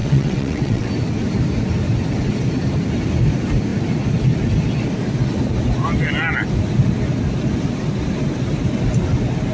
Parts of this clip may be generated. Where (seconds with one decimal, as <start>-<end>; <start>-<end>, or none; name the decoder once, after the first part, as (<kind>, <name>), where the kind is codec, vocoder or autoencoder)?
0.0-0.9 (vocoder, WaveNeXt)